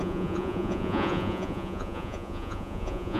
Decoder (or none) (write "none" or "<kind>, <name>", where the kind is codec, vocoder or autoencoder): vocoder, Vocos